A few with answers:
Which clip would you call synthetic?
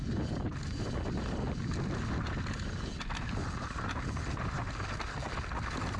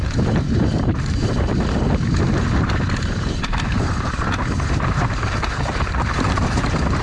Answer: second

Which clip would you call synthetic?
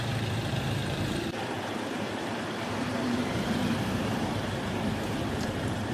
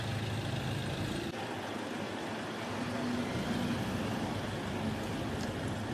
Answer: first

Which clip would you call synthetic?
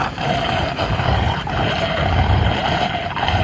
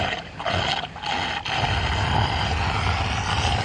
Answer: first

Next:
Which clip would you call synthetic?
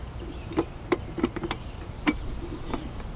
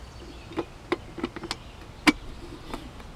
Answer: first